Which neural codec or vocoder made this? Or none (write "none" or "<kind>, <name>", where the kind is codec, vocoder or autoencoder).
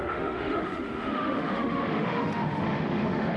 autoencoder, DAC-VAE